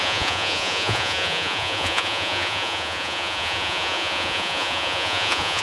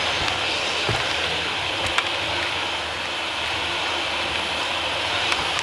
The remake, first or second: first